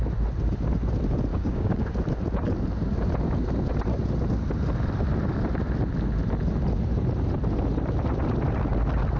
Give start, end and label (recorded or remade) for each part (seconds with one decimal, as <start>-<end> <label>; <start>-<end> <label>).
0.0-1.3 recorded; 1.3-1.9 remade; 1.9-9.2 recorded

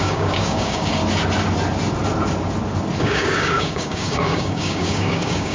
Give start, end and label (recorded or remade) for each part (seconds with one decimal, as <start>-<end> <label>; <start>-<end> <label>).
0.0-1.0 remade; 1.0-3.0 recorded; 3.0-5.5 remade

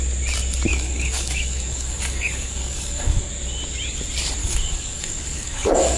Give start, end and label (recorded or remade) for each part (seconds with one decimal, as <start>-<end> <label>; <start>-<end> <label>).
0.0-0.7 recorded; 0.7-3.3 remade; 3.3-4.4 recorded; 4.4-6.0 remade